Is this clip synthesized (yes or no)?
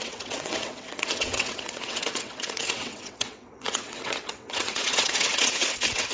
yes